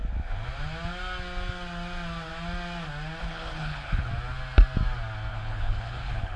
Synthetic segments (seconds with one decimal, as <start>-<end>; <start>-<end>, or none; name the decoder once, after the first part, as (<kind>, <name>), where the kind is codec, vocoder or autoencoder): 3.2-4.1 (codec, HILCodec); 5.3-6.4